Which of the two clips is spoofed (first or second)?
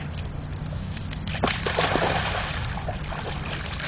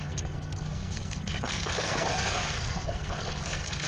second